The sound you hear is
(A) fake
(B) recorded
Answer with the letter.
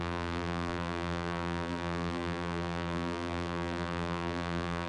A